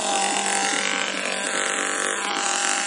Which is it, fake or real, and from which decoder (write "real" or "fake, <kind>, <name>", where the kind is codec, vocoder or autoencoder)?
real